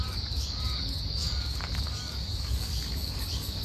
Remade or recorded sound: remade